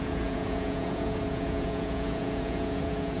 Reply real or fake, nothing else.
fake